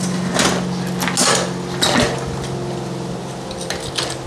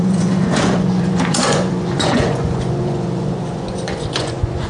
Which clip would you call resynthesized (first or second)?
second